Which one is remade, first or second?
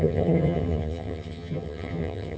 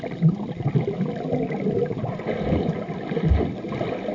first